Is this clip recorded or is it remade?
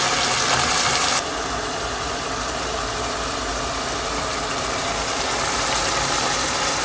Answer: recorded